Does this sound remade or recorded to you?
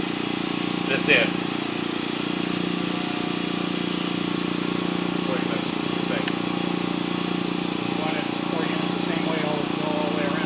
recorded